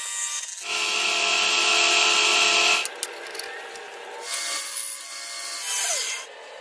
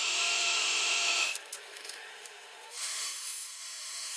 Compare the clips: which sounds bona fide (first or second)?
first